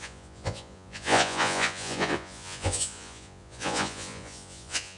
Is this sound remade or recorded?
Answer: remade